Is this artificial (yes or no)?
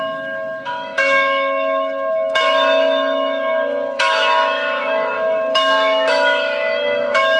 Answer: yes